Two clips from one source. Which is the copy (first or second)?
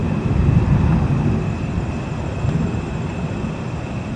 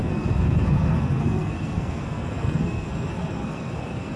second